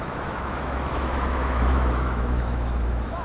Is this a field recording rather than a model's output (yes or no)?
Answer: no